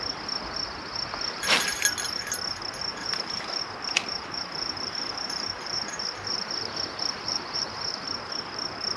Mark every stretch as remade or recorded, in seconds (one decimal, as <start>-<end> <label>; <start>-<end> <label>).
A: 0.0-2.9 recorded; 2.9-3.6 remade; 3.6-4.0 recorded; 4.0-8.0 remade; 8.0-9.0 recorded